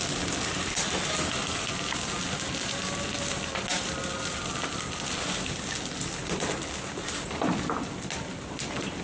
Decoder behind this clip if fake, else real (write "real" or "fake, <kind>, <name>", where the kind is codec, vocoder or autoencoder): real